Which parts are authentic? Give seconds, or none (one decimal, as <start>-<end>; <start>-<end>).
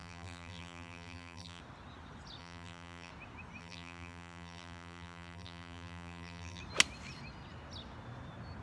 1.6-2.4; 3.1-3.6; 6.6-8.6